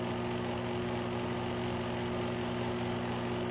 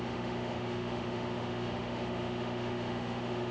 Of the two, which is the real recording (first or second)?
first